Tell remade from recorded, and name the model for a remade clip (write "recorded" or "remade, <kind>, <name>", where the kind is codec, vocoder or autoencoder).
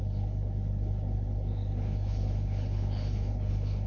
remade, codec, HILCodec